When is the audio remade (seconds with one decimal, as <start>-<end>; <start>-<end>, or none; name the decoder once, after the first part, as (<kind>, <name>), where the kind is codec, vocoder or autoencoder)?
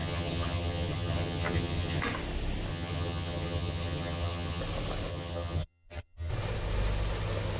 0.0-2.0 (vocoder, HiFi-GAN); 2.7-4.6; 5.1-6.3